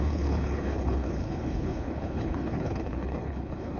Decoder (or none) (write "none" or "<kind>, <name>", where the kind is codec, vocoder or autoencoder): codec, HILCodec